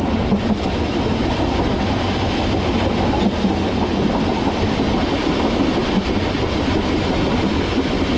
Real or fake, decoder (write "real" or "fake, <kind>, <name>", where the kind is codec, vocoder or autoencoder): real